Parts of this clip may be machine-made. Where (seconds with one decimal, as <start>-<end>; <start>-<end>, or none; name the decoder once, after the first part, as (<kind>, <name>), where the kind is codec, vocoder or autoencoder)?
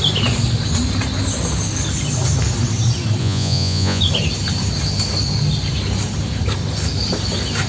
3.2-4.0 (vocoder, Vocos)